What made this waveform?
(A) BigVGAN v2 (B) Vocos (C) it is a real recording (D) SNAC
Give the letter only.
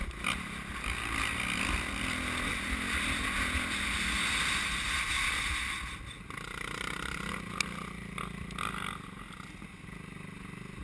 C